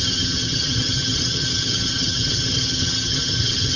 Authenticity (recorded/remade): remade